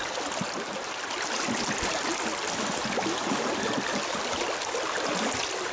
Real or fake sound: real